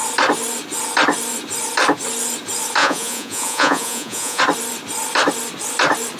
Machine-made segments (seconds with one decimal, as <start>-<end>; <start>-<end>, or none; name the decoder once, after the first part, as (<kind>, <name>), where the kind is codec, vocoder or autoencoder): 2.8-4.4 (vocoder, Vocos)